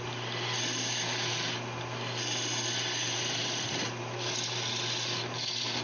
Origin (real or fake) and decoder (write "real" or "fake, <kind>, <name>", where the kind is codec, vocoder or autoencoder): real